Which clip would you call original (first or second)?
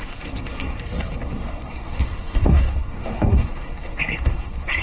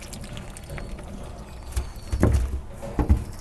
second